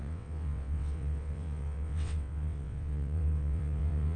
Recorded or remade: remade